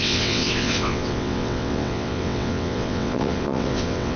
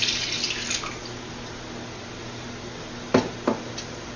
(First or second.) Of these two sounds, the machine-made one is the first